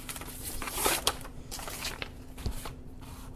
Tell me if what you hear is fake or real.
fake